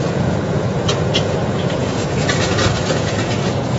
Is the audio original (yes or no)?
no